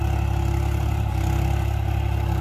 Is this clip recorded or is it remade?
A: recorded